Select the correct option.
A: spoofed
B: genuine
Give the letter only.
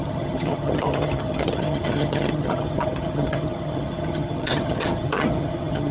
A